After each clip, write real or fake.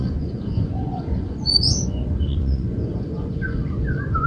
fake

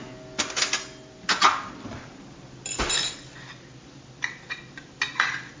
real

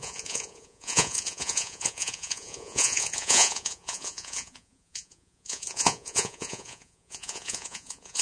fake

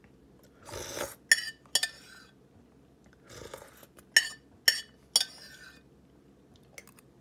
real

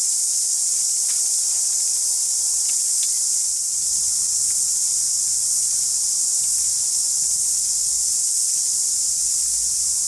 real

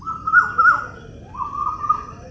real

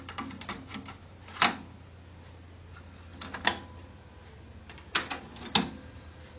real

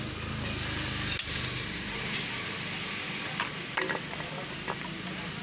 real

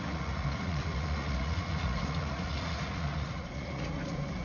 fake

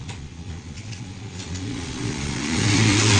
fake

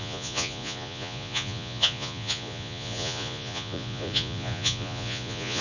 fake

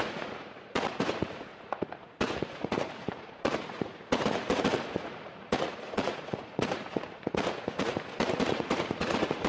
fake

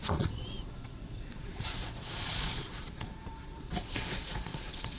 fake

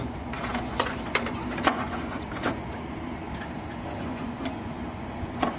fake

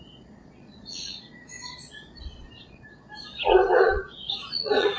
fake